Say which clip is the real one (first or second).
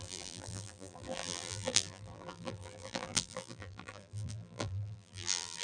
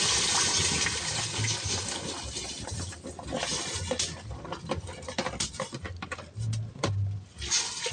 second